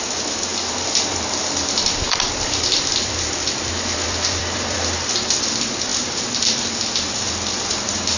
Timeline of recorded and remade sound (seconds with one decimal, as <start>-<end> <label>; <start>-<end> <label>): 0.0-8.2 remade